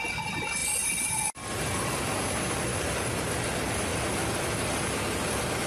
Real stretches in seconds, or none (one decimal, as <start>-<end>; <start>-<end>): 0.0-0.6; 2.0-2.7; 3.5-3.9; 4.8-5.7